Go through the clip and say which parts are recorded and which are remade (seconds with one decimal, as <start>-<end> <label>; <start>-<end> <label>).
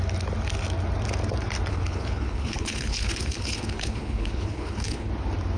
0.0-1.7 recorded; 1.7-5.1 remade; 5.1-5.6 recorded